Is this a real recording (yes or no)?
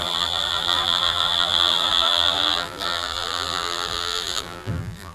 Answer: no